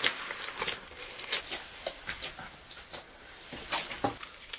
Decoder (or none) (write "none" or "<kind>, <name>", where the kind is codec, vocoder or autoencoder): none